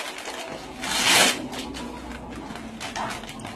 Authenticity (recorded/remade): recorded